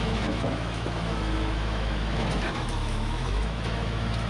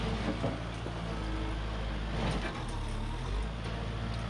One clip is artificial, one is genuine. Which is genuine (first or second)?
second